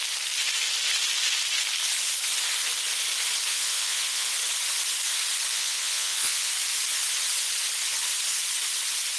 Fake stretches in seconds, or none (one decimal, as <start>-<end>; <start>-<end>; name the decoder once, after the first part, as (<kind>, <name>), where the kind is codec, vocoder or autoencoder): 3.5-4.3 (vocoder, Vocos); 5.5-6.5